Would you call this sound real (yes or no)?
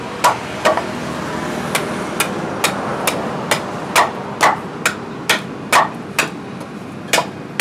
yes